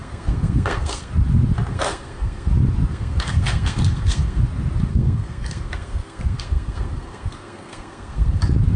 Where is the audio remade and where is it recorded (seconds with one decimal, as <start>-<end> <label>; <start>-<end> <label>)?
0.0-1.1 remade; 1.1-1.7 recorded; 1.7-2.5 remade; 2.5-2.9 recorded; 2.9-4.4 remade; 4.4-4.9 recorded; 4.9-8.4 remade; 8.4-8.8 recorded